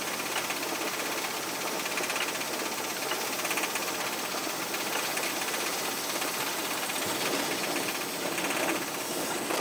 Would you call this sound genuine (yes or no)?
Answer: yes